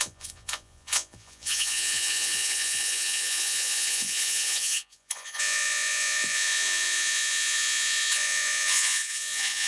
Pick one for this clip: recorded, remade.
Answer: remade